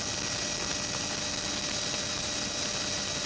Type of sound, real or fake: real